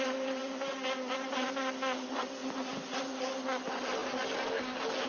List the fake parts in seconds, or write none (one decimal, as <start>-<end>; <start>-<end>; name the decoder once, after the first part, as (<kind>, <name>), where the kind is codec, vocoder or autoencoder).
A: none